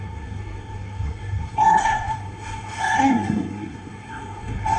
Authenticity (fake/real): fake